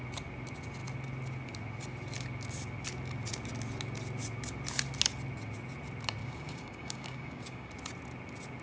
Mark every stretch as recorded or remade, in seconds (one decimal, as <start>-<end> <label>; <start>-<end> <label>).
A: 0.0-6.2 recorded; 6.2-7.7 remade; 7.7-8.6 recorded